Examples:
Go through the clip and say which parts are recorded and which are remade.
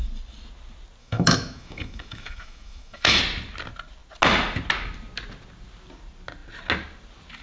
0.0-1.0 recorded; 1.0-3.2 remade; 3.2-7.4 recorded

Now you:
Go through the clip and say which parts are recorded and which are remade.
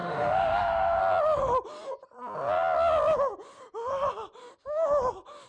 0.0-1.0 remade; 1.0-5.5 recorded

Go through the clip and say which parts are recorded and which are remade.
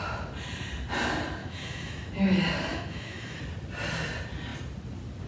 0.0-1.4 recorded; 1.4-2.1 remade; 2.1-2.7 recorded; 2.7-3.4 remade; 3.4-5.3 recorded